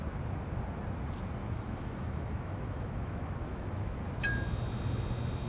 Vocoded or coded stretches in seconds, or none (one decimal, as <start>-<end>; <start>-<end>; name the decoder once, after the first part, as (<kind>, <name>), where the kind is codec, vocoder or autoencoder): 1.4-4.0 (autoencoder, DAC-VAE)

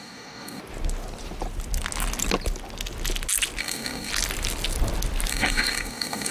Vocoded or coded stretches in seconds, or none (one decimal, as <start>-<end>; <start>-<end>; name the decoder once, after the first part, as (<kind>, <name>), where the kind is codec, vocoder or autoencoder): 0.0-0.6 (codec, DAC); 3.6-4.1; 5.3-6.3